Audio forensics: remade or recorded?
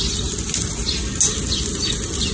recorded